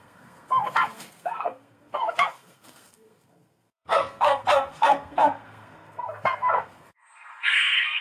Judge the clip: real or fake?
fake